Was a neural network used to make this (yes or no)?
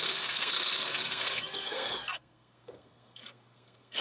yes